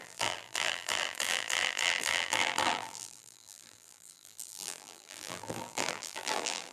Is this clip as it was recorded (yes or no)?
no